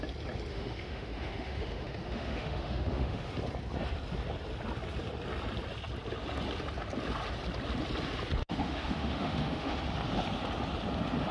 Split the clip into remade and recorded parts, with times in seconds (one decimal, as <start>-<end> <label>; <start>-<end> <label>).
0.0-0.5 recorded; 0.5-3.3 remade; 3.3-8.4 recorded; 8.4-9.8 remade; 9.8-11.3 recorded